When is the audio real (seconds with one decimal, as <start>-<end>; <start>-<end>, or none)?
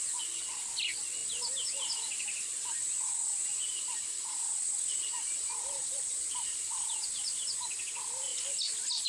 0.0-9.1